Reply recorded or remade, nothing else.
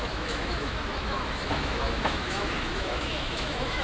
remade